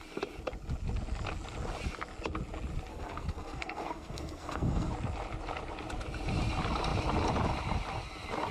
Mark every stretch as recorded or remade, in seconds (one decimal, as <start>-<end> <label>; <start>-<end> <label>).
0.0-2.9 recorded; 2.9-4.9 remade; 4.9-8.5 recorded